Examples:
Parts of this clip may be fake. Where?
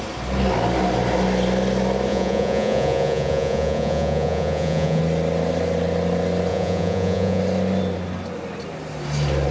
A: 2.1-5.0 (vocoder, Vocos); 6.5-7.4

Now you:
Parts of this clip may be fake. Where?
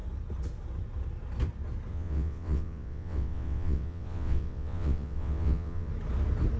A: 1.9-5.9 (vocoder, WaveNeXt)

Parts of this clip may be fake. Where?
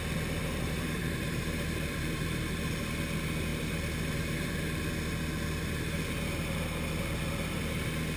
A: 0.4-2.8 (vocoder, BigVGAN v2); 3.5-4.6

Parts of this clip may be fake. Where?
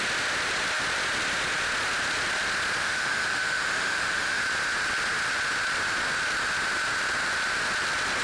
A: 2.8-4.4 (autoencoder, DAC-VAE)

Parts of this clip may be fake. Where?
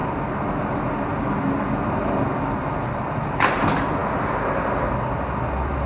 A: none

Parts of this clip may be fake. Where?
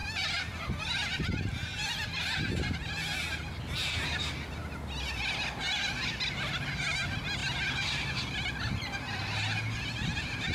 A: none